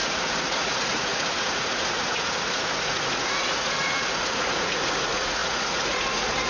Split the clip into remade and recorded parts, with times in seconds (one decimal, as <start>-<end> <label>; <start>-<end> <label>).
0.0-6.5 remade

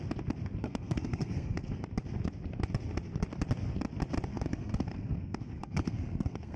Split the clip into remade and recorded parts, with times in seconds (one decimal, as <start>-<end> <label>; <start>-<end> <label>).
0.0-0.6 recorded; 0.6-1.8 remade; 1.8-4.3 recorded; 4.3-6.6 remade

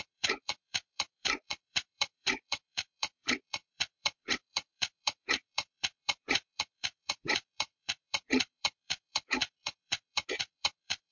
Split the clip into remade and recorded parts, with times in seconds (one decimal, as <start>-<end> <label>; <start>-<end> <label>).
0.0-11.1 remade

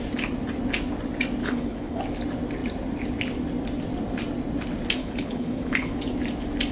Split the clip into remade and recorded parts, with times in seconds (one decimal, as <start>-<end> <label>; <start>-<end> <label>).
0.0-1.4 recorded; 1.4-2.0 remade; 2.0-5.0 recorded; 5.0-6.0 remade; 6.0-6.7 recorded

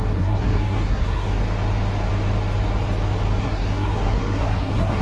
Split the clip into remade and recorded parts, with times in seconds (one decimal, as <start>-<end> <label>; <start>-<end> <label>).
0.0-1.4 remade; 1.4-3.4 recorded; 3.4-5.0 remade